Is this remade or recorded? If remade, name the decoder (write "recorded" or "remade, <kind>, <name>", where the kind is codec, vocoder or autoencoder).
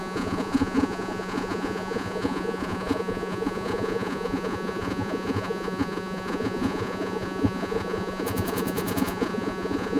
remade, vocoder, Vocos